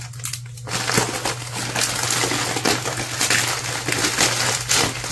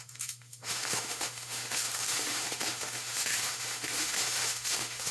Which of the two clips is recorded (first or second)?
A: first